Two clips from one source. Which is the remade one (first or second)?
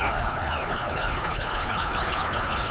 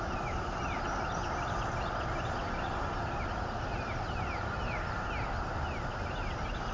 first